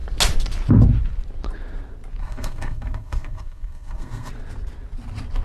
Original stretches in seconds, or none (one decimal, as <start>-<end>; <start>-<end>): 0.0-2.2; 4.3-5.4